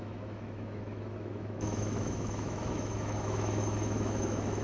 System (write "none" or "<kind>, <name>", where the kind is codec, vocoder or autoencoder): autoencoder, DAC-VAE